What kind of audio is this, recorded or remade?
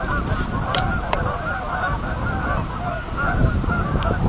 recorded